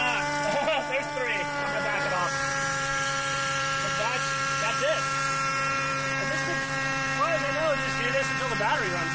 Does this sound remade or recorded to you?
remade